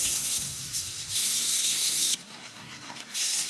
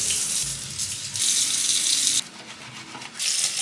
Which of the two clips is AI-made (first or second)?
first